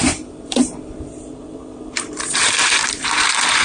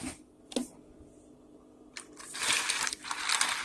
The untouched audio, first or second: second